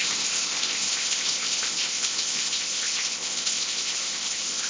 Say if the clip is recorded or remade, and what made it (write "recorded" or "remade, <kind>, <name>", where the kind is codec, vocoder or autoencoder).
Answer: remade, codec, ZipCodec